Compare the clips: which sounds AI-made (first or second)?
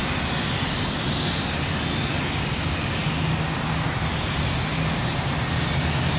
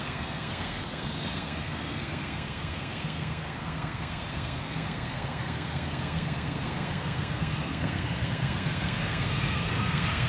second